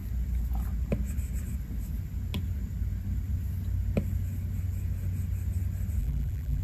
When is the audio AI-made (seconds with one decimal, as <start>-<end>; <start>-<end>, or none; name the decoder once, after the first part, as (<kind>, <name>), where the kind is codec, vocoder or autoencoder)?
6.0-6.6 (vocoder, BigVGAN v2)